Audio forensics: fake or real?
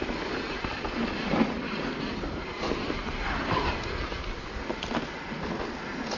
real